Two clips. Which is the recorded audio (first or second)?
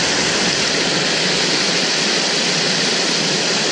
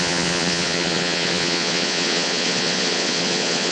first